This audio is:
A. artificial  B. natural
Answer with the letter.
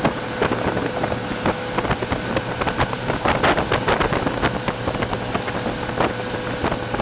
B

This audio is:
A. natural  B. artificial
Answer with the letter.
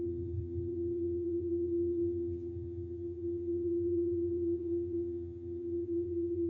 B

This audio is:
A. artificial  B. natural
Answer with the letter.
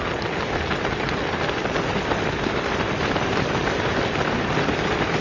B